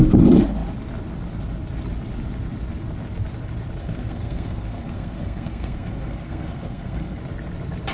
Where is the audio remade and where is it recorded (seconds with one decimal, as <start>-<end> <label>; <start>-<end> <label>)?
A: 0.0-3.8 recorded; 3.8-7.2 remade; 7.2-7.9 recorded